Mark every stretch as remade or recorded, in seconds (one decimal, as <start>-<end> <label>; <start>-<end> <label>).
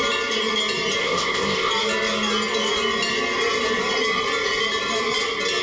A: 0.0-1.0 recorded; 1.0-1.7 remade; 1.7-5.6 recorded